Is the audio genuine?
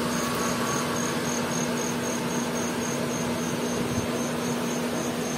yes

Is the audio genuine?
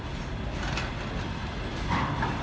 yes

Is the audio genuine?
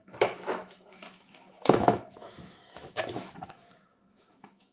no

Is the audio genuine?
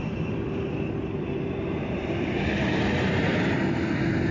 yes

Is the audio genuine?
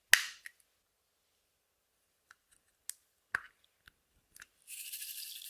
yes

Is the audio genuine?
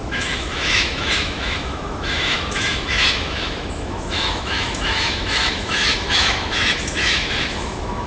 no